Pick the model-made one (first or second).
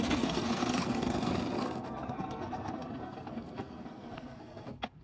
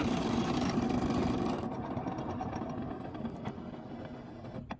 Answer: first